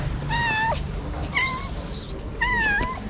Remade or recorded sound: recorded